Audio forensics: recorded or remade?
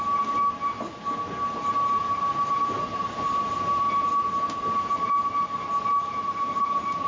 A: recorded